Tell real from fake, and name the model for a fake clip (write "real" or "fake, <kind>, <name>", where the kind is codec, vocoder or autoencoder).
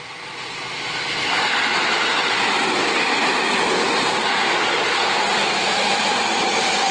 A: real